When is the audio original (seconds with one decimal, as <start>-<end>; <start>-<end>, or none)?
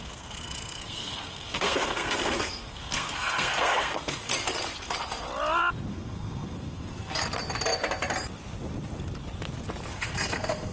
4.3-5.9; 7.2-9.9